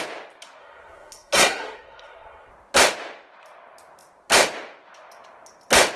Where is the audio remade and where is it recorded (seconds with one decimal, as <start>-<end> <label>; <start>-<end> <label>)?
0.0-0.6 recorded; 0.6-2.5 remade; 2.5-6.0 recorded